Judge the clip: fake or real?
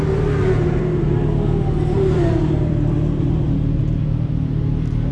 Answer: real